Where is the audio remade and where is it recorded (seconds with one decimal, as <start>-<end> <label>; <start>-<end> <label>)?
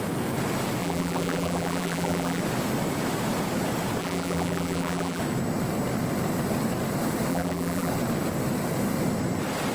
0.0-0.8 recorded; 0.8-2.4 remade; 2.4-4.0 recorded; 4.0-5.2 remade; 5.2-7.3 recorded; 7.3-7.9 remade; 7.9-9.7 recorded